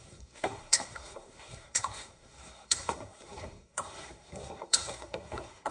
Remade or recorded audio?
remade